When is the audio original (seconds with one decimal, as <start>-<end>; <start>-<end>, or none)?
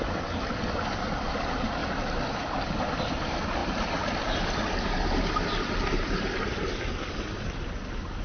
0.0-8.2